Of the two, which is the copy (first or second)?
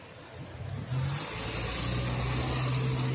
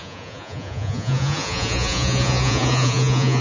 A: second